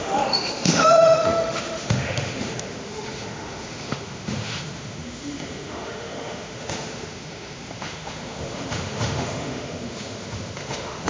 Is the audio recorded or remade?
remade